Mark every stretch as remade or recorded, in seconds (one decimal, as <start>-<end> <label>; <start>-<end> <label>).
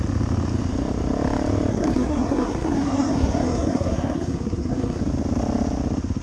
0.0-1.7 recorded; 1.7-5.0 remade; 5.0-6.2 recorded